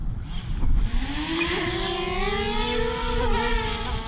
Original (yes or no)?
yes